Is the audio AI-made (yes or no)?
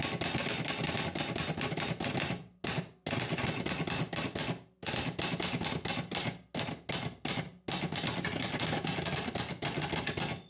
no